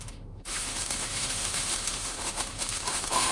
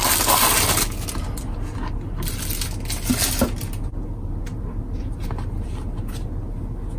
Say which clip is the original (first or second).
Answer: second